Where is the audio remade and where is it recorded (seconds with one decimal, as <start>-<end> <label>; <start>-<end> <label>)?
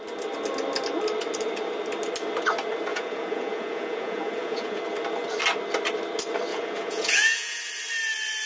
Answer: 0.0-2.9 recorded; 2.9-4.8 remade; 4.8-6.5 recorded; 6.5-7.6 remade; 7.6-8.5 recorded